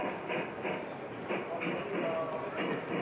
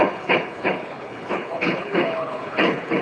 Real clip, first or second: first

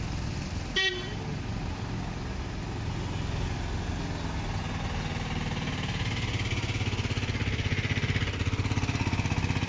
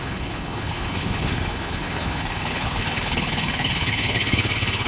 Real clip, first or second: first